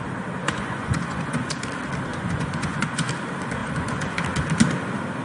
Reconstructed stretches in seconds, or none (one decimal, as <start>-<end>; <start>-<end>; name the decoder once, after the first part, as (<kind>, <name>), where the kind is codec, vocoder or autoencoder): 0.4-1.5 (vocoder, Vocos); 2.1-3.1; 3.6-4.2